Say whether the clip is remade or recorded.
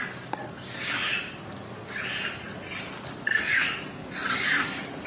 recorded